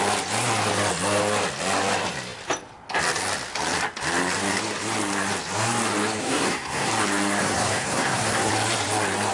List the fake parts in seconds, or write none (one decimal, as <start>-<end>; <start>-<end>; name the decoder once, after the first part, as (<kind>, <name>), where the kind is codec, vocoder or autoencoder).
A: 6.2-6.9 (codec, SNAC); 7.4-8.5